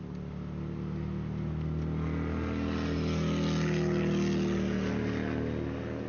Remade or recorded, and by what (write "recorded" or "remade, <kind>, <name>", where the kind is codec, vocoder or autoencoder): recorded